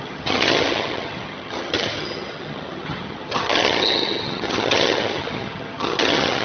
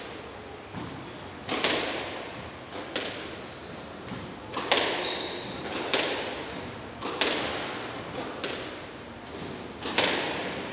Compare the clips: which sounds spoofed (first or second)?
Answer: first